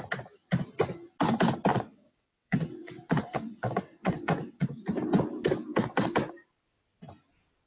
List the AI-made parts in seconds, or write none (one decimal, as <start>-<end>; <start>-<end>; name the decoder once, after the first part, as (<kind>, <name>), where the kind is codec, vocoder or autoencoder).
1.7-4.8 (vocoder, WaveNeXt); 5.7-6.3